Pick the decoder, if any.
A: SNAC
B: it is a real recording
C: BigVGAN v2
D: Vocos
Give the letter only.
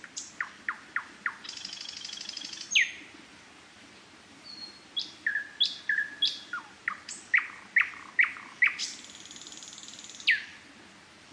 B